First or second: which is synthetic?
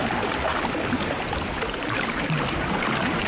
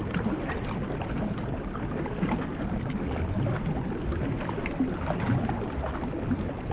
first